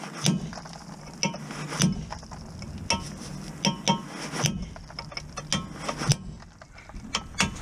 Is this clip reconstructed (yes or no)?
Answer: no